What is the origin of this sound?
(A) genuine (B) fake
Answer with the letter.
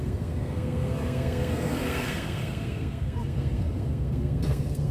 B